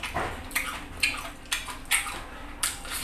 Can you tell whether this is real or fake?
real